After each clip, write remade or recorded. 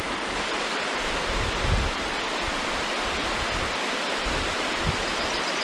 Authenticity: recorded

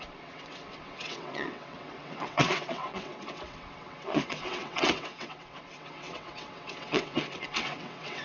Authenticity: remade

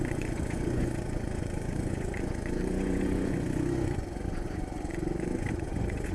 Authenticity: remade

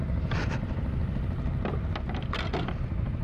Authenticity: recorded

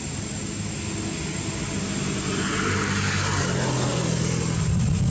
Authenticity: recorded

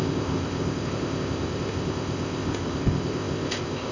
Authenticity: remade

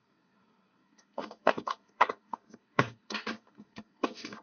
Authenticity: remade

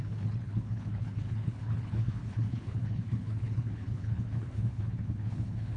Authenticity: remade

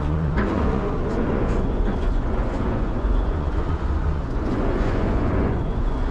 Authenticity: remade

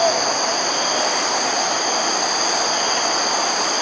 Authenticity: recorded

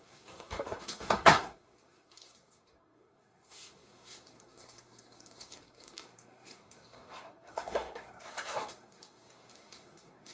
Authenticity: remade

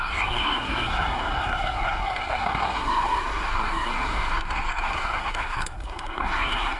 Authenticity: remade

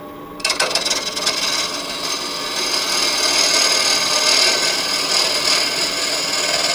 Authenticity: recorded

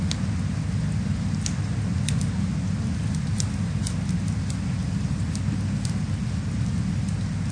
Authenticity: recorded